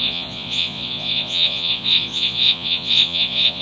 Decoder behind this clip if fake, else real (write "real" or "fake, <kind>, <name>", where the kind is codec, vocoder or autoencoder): fake, vocoder, Vocos